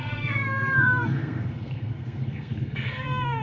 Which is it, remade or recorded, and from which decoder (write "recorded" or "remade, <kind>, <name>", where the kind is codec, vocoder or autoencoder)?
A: remade, codec, SNAC